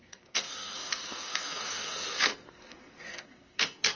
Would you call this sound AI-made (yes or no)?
yes